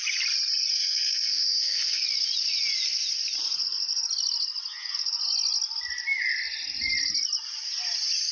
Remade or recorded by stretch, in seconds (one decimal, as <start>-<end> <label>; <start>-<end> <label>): 0.0-0.7 recorded; 0.7-2.0 remade; 2.0-8.3 recorded